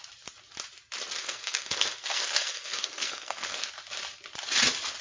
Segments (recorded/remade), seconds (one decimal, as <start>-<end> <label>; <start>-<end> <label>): 0.0-1.2 recorded; 1.2-3.7 remade; 3.7-5.0 recorded